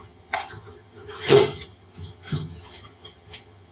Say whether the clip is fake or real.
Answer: fake